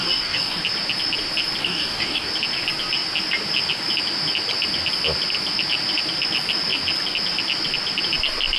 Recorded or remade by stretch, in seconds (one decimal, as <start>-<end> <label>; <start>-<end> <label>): 0.0-0.6 remade; 0.6-1.6 recorded; 1.6-2.3 remade; 2.3-8.6 recorded